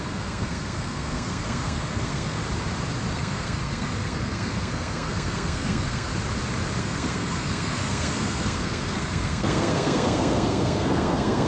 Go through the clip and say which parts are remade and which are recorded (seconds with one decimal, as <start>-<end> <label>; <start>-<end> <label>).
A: 0.0-2.4 remade; 2.4-3.1 recorded; 3.1-6.1 remade; 6.1-6.8 recorded; 6.8-11.5 remade